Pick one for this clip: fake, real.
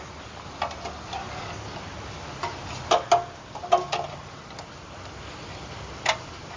real